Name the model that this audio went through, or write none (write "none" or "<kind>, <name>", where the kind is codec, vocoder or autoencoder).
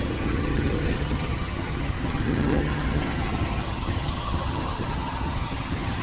vocoder, HiFi-GAN